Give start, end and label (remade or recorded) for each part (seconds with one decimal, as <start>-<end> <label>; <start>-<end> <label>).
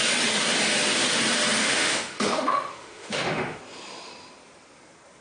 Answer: 0.0-1.6 recorded; 1.6-3.6 remade; 3.6-5.2 recorded